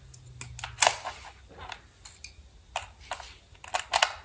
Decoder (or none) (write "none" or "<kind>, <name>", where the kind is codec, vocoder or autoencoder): none